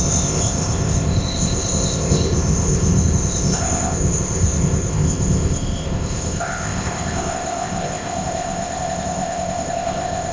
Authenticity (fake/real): fake